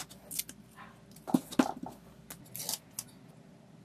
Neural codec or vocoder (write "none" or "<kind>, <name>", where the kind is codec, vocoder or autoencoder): none